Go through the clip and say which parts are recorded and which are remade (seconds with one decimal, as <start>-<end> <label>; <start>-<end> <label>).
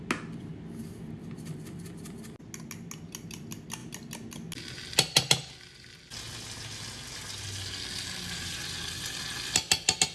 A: 0.0-10.1 recorded